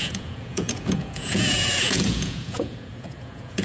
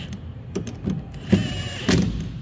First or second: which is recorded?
second